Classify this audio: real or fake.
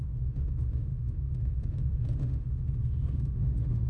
fake